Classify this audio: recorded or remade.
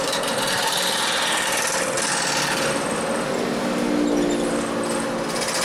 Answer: recorded